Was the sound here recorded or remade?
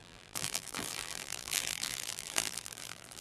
remade